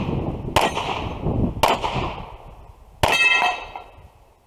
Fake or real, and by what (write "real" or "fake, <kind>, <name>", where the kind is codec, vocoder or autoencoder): real